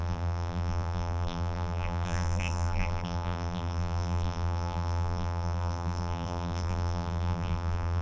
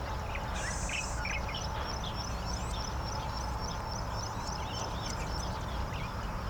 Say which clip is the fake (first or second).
first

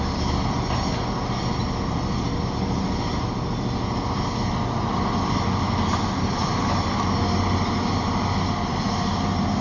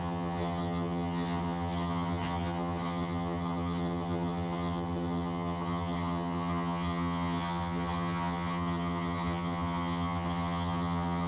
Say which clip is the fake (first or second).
second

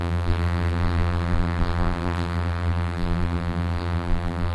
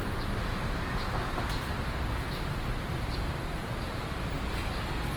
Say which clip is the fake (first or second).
first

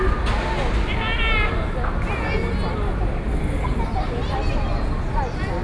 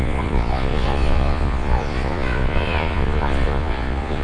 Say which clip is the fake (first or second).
second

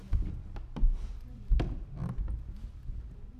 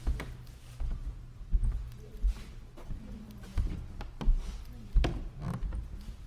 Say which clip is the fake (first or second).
first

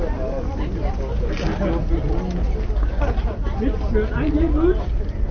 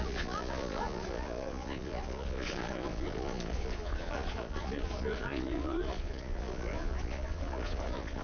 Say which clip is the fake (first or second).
second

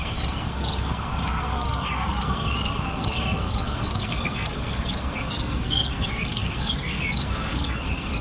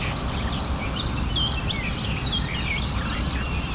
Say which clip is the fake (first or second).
first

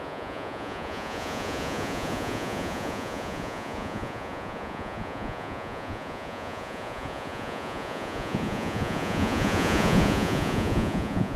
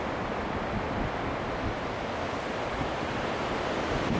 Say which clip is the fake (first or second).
first